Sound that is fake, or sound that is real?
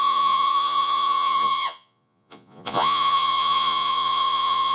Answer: fake